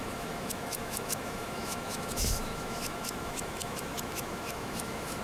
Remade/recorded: remade